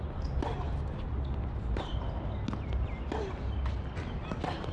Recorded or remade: recorded